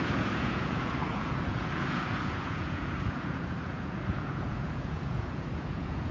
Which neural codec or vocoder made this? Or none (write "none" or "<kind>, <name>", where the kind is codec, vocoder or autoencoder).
vocoder, Vocos